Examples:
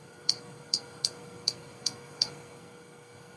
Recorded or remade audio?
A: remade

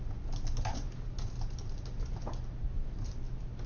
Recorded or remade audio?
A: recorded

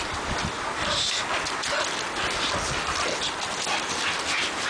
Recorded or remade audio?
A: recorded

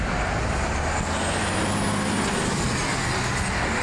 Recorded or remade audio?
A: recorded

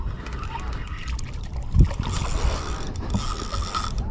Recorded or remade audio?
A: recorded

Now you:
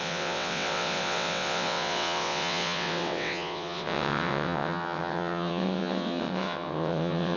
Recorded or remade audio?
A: remade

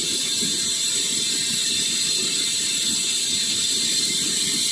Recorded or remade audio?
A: remade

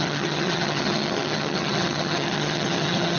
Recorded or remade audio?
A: remade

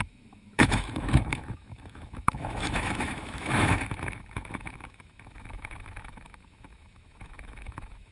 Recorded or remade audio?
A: remade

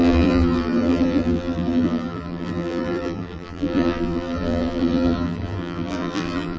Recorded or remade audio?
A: remade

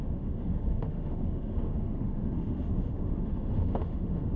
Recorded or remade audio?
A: remade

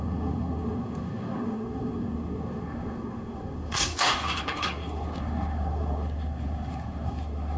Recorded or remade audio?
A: remade